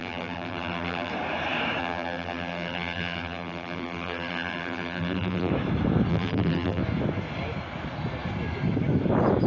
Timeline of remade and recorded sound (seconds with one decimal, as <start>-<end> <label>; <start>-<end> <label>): 0.0-1.1 remade; 1.1-1.8 recorded; 1.8-5.5 remade; 5.5-6.1 recorded; 6.1-6.8 remade; 6.8-9.5 recorded